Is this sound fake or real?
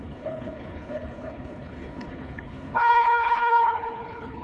fake